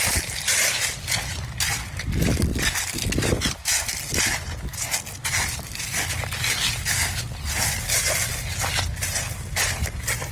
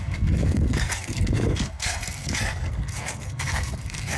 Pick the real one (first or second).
first